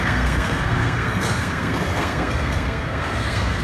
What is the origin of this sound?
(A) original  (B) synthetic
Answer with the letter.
B